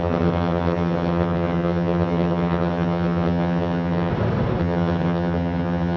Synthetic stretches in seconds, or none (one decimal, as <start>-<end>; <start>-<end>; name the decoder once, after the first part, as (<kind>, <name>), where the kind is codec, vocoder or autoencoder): 0.0-4.1 (vocoder, HiFi-GAN); 4.6-6.0